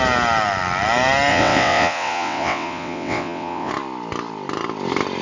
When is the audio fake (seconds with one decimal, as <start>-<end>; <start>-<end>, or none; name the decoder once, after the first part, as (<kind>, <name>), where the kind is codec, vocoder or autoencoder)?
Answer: 1.3-3.7 (vocoder, WaveNeXt)